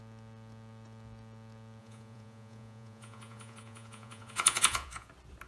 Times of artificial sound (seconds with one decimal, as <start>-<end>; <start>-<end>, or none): 1.8-5.1